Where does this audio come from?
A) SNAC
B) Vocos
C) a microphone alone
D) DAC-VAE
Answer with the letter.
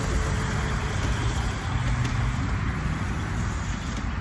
C